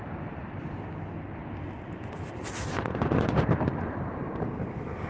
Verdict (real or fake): real